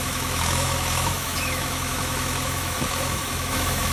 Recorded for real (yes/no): no